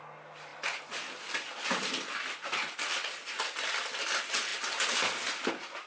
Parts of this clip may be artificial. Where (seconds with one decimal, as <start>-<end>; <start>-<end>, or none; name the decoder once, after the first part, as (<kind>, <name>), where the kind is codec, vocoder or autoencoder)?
none